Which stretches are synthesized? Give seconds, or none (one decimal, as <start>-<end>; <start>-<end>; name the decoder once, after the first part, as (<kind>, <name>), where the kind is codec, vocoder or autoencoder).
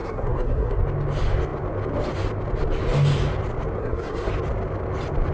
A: 0.0-0.8 (codec, SNAC); 3.8-4.3